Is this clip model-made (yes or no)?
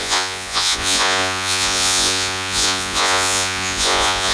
yes